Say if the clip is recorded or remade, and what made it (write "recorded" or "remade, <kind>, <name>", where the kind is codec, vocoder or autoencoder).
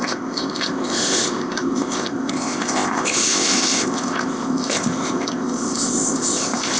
remade, codec, ZipCodec